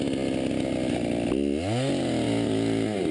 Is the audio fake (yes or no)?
no